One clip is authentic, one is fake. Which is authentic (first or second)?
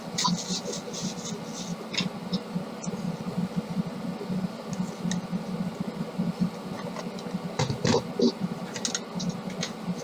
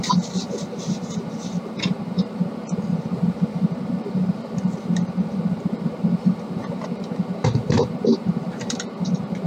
first